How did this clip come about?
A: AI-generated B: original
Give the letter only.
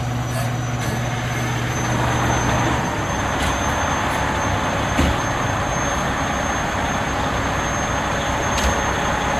B